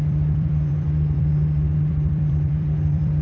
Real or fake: fake